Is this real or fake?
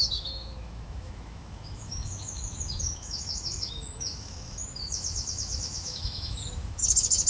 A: fake